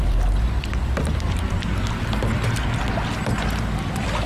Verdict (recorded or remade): recorded